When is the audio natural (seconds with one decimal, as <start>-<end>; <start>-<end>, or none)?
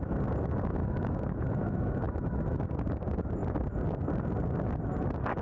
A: 0.0-0.8; 2.7-5.4